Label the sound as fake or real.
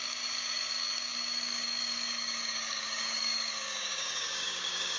fake